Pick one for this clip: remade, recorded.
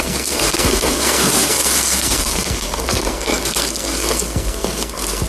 remade